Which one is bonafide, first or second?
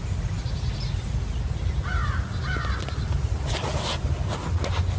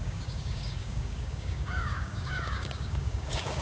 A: first